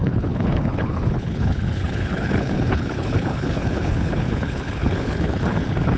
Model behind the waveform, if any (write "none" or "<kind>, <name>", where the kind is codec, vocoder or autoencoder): codec, HILCodec